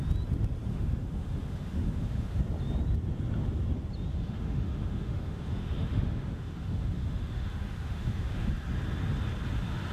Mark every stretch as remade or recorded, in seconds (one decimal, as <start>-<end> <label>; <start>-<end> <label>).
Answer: 0.0-0.7 recorded; 0.7-2.4 remade; 2.4-4.1 recorded; 4.1-8.5 remade; 8.5-9.9 recorded